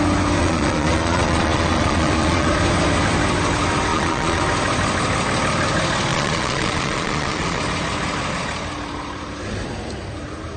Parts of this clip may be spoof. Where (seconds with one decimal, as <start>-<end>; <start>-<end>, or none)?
0.4-2.5; 3.9-4.4; 6.1-7.6